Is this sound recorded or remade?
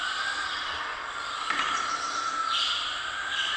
recorded